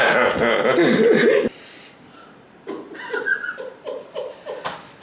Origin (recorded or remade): recorded